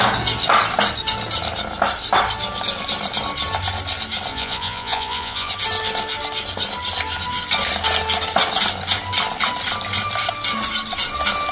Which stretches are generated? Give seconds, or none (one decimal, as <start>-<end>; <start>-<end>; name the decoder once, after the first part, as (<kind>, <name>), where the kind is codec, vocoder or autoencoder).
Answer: 4.3-5.5 (vocoder, Vocos)